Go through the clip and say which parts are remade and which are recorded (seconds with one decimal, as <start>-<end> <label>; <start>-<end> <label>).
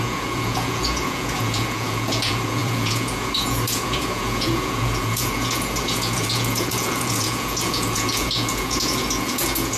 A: 0.0-9.8 remade